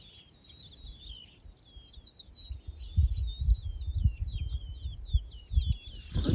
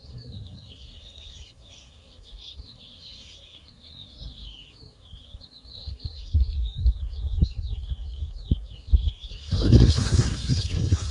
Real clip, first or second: first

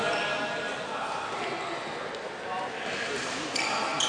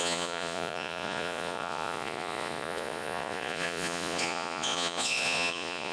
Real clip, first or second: first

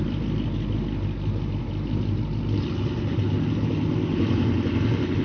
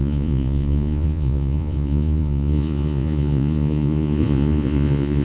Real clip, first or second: first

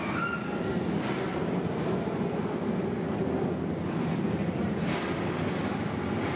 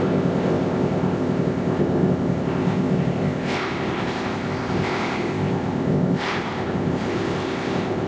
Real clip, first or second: first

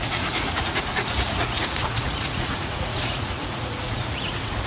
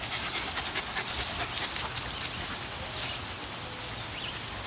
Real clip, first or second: second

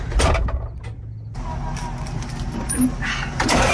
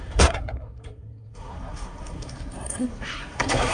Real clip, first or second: first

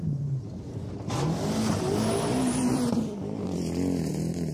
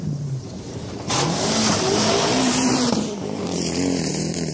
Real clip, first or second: first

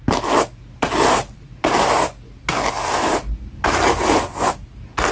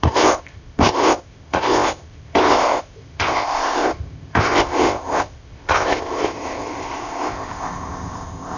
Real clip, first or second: first